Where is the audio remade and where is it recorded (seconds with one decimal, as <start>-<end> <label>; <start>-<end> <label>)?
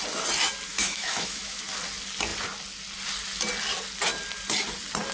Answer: 0.0-0.7 recorded; 0.7-1.6 remade; 1.6-5.1 recorded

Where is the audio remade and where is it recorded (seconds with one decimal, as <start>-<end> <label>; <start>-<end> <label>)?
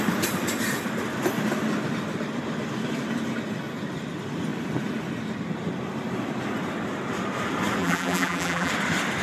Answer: 0.0-7.8 recorded; 7.8-8.7 remade; 8.7-9.2 recorded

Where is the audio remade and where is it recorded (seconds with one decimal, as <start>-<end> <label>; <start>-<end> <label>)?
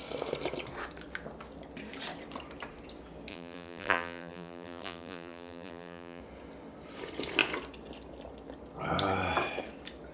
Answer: 0.0-3.3 recorded; 3.3-6.2 remade; 6.2-10.1 recorded